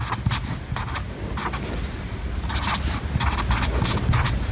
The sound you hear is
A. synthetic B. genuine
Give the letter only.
B